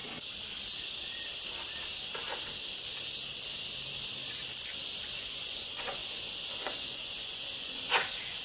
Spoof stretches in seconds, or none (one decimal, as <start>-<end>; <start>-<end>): 5.0-8.4